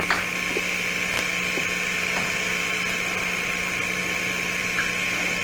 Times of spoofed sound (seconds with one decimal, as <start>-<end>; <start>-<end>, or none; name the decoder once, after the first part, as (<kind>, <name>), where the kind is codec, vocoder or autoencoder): none